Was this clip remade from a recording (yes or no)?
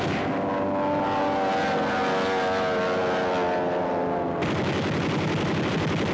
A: no